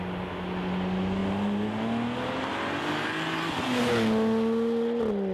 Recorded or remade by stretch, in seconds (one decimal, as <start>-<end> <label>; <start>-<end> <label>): 0.0-5.3 recorded

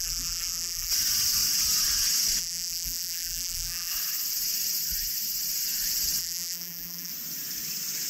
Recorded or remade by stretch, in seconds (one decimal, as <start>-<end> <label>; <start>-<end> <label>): 0.0-0.9 remade; 0.9-2.4 recorded; 2.4-3.9 remade; 3.9-6.2 recorded; 6.2-7.1 remade; 7.1-8.1 recorded